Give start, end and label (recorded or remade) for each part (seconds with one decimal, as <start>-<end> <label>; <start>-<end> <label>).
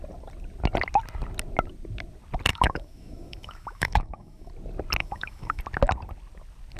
0.0-2.5 recorded; 2.5-4.5 remade; 4.5-5.0 recorded; 5.0-5.6 remade; 5.6-6.8 recorded